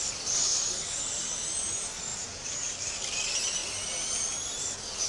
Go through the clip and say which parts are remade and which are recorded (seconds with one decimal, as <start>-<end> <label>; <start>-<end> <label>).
0.0-2.1 recorded; 2.1-2.9 remade; 2.9-5.1 recorded